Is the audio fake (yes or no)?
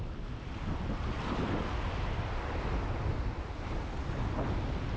no